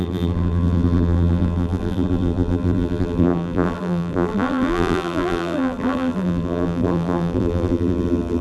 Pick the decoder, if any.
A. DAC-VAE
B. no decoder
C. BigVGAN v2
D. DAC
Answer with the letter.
C